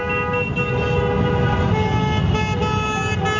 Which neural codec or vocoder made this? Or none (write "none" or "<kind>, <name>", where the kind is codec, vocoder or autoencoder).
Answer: none